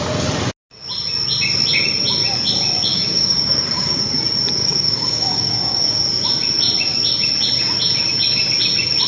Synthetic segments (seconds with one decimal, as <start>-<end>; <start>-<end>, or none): 2.9-4.0; 4.6-6.0